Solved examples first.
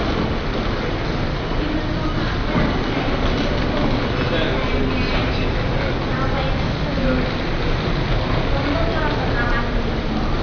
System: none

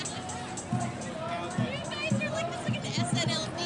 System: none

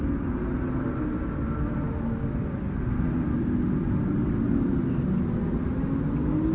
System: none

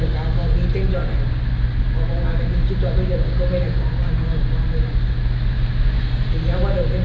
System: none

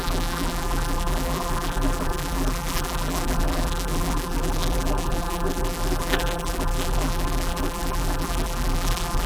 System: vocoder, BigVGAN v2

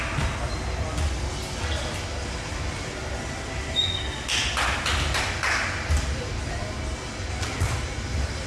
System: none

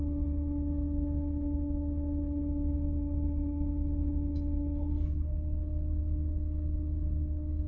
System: codec, HILCodec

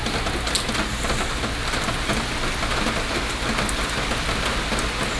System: none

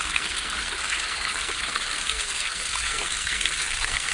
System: codec, SNAC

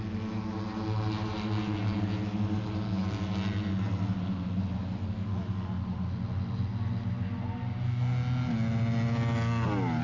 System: none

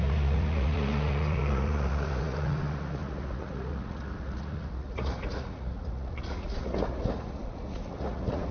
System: vocoder, Vocos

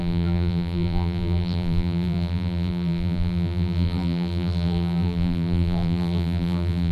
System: vocoder, BigVGAN v2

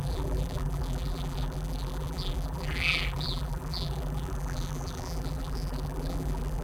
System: vocoder, BigVGAN v2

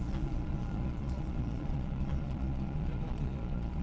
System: vocoder, Vocos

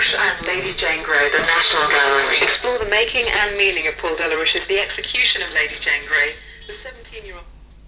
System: vocoder, BigVGAN v2